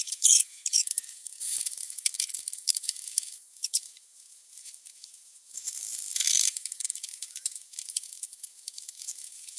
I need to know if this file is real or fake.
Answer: fake